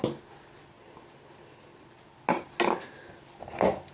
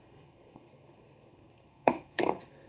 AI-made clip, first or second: second